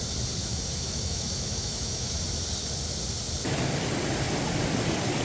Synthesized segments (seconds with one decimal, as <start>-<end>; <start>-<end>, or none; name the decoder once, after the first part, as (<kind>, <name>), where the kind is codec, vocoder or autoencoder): 0.4-2.2 (autoencoder, DAC-VAE)